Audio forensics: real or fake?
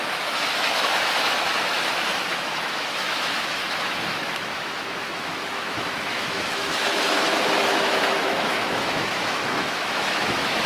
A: fake